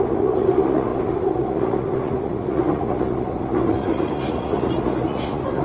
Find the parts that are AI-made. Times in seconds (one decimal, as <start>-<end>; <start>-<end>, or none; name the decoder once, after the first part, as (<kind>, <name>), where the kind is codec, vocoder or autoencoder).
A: 0.0-5.6 (vocoder, Vocos)